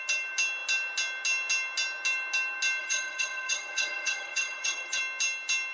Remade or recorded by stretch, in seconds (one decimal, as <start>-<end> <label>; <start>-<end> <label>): 0.0-2.8 recorded; 2.8-5.0 remade; 5.0-5.7 recorded